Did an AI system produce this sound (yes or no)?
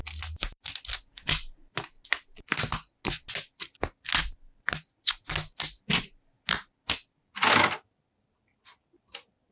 no